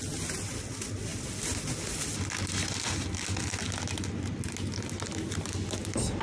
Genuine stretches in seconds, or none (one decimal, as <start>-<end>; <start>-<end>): 0.0-6.2